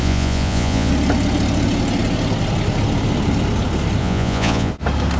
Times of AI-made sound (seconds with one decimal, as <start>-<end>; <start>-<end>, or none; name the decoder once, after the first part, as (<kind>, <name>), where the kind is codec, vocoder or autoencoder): 0.0-0.9 (vocoder, Vocos); 4.0-4.7